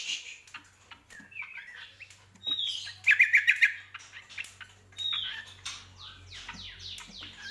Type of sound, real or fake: real